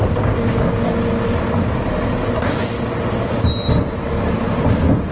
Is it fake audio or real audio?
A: real